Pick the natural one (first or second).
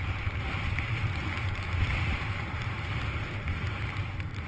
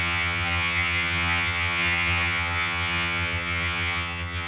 first